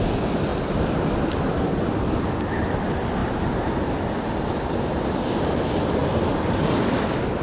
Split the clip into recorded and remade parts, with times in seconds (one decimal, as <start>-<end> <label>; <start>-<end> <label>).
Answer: 0.0-0.5 recorded; 0.5-2.2 remade; 2.2-3.2 recorded; 3.2-4.8 remade; 4.8-6.0 recorded; 6.0-7.0 remade; 7.0-7.4 recorded